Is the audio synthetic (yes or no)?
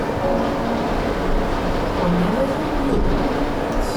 no